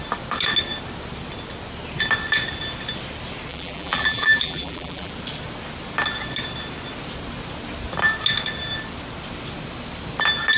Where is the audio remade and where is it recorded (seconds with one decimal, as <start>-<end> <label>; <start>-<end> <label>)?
0.0-3.5 recorded; 3.5-5.1 remade; 5.1-10.6 recorded